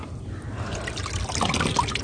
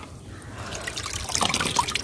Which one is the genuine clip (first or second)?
first